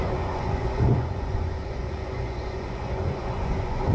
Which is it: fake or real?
fake